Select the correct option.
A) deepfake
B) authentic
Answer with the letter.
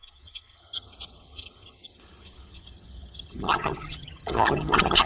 A